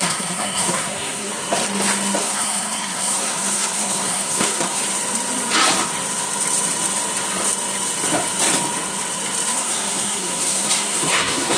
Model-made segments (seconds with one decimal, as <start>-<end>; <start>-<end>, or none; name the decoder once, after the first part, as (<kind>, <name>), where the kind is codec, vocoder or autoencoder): 0.0-1.3 (codec, SNAC); 2.2-4.8; 9.5-11.6